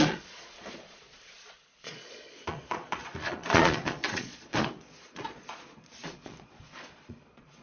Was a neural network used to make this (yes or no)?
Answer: yes